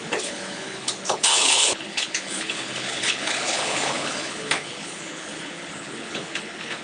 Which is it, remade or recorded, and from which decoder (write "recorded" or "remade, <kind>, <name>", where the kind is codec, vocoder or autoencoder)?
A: remade, codec, HILCodec